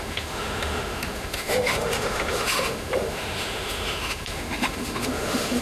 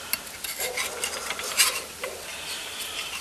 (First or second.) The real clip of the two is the second